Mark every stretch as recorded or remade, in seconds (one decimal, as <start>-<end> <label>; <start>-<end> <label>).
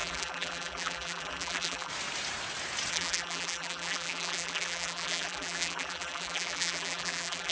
0.0-1.9 remade; 1.9-2.9 recorded; 2.9-7.5 remade